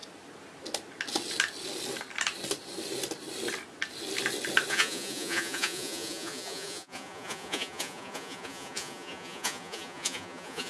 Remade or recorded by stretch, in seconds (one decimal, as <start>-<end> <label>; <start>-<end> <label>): 0.0-4.7 recorded; 4.7-10.7 remade